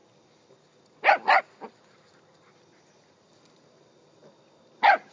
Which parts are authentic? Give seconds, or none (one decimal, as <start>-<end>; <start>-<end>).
0.0-5.1